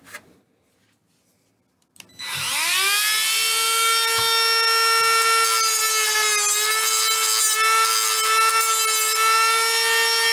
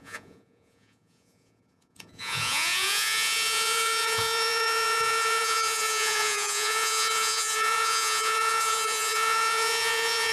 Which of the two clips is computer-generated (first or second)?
second